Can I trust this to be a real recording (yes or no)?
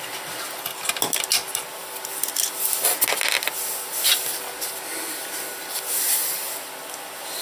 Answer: yes